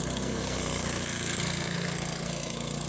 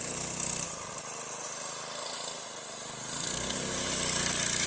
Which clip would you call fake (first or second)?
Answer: first